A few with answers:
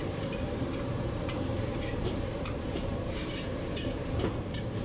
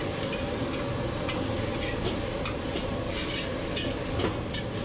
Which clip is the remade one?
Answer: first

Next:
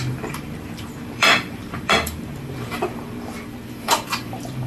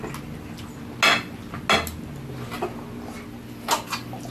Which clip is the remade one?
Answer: first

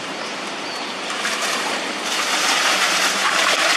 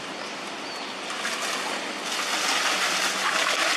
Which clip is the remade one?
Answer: first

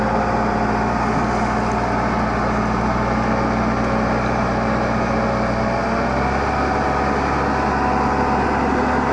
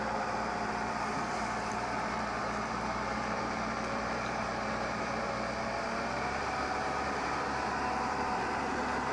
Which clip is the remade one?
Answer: second